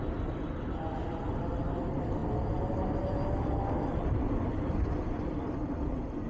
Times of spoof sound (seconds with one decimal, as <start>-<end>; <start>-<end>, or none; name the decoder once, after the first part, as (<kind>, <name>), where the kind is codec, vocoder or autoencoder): none